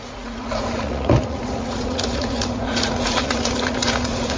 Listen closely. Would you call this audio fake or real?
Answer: fake